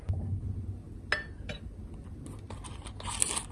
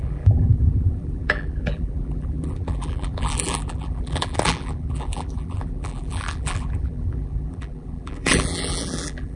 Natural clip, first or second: first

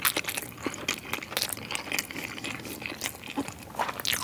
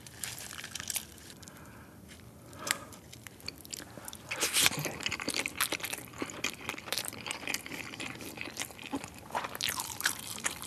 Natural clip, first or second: first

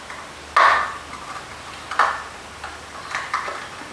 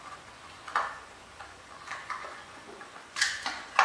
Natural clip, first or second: first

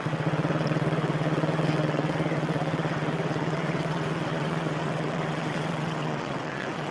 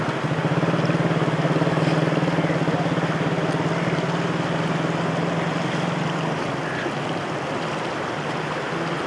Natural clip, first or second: second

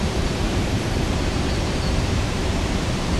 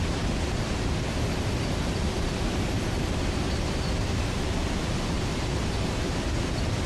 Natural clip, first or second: second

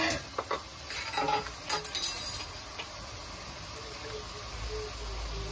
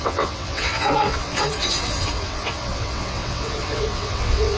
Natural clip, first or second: first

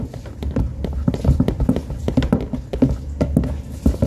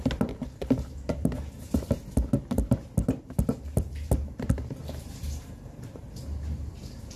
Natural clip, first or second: first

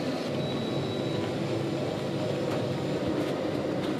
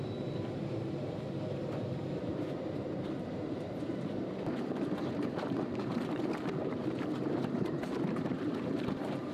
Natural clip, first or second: first